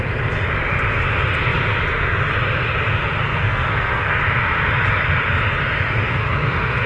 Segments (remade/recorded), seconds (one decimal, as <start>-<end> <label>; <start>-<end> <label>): 0.0-3.3 recorded; 3.3-4.1 remade; 4.1-6.0 recorded; 6.0-6.9 remade